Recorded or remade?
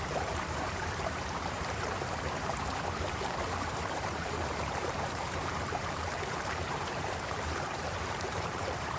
remade